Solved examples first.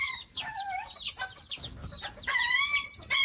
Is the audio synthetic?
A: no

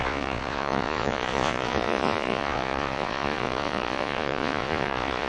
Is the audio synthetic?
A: yes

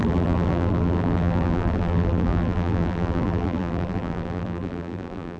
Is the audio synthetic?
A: yes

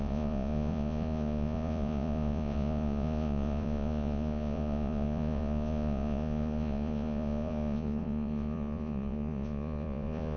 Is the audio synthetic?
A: yes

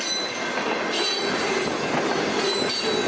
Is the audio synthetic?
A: no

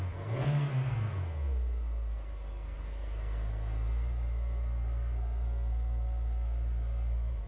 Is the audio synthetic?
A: yes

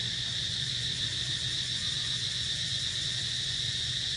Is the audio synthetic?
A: yes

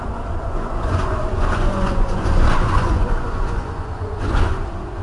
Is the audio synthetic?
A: yes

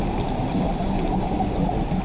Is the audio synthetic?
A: no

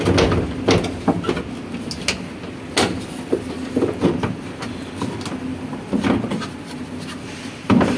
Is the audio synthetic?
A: no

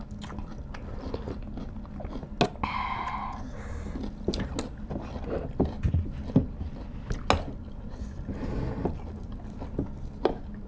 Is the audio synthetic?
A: no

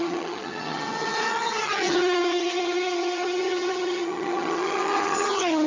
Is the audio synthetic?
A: yes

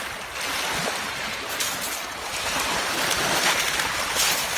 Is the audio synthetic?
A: no